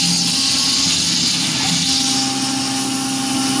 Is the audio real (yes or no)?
yes